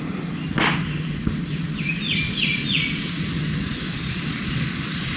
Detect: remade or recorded recorded